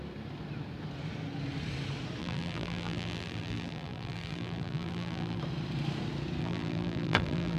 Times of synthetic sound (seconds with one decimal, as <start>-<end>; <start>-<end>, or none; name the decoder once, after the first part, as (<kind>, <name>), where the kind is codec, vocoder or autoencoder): 2.2-5.4 (vocoder, BigVGAN v2); 6.4-7.6